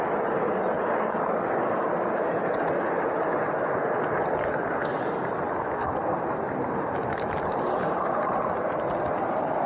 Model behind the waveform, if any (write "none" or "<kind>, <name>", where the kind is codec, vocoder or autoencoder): none